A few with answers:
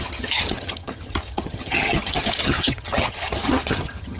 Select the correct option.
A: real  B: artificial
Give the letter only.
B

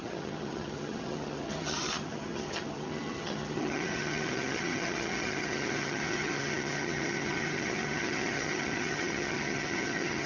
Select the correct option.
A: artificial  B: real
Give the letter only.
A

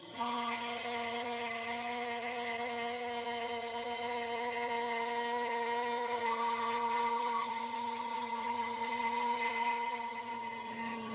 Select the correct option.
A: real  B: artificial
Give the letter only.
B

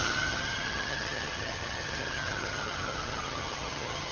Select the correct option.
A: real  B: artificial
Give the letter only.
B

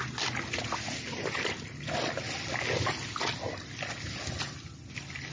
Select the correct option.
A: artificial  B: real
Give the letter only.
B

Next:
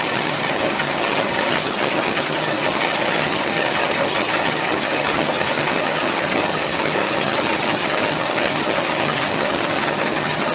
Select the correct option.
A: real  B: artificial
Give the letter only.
B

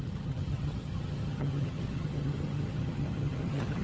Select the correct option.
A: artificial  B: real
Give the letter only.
A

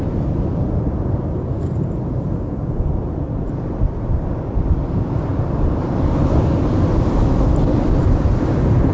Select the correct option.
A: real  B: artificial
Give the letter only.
A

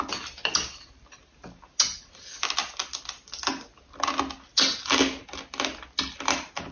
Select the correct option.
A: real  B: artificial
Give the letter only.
A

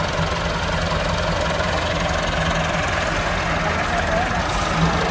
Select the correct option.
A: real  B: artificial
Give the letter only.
A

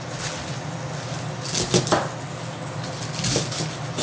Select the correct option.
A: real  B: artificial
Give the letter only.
A